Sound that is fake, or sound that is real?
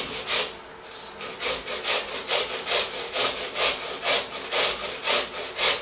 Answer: real